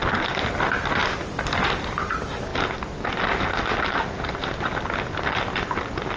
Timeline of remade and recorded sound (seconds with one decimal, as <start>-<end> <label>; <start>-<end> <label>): 0.0-6.2 recorded